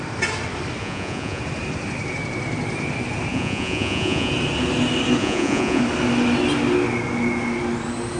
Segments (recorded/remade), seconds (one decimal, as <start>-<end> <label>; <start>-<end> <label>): 0.0-0.8 recorded; 0.8-1.4 remade; 1.4-3.3 recorded; 3.3-4.3 remade; 4.3-5.2 recorded; 5.2-5.8 remade; 5.8-8.2 recorded